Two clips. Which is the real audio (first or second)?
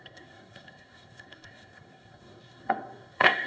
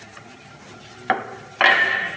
second